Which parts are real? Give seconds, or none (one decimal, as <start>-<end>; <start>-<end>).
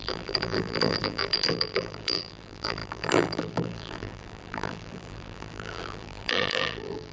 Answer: none